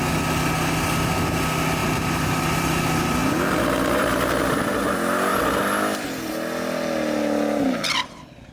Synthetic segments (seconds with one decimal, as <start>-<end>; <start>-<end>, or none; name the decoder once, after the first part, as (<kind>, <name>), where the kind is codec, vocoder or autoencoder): 1.8-2.8 (vocoder, BigVGAN v2)